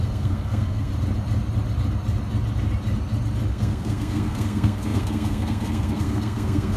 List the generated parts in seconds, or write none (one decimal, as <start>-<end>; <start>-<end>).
0.0-0.9; 3.5-6.8